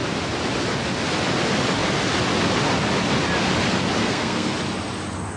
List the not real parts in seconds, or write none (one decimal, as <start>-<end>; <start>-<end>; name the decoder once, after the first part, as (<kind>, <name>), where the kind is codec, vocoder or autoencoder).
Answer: 4.0-4.5 (codec, SNAC)

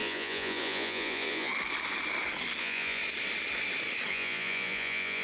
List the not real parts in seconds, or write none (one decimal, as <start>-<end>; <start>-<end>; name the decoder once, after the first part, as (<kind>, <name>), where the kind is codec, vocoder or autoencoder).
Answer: 0.0-1.5 (vocoder, Vocos); 2.6-3.0; 4.1-5.2